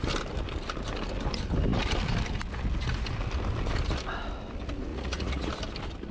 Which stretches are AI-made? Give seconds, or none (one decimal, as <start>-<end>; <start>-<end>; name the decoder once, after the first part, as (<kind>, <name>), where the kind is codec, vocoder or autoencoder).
4.9-5.5 (vocoder, Vocos)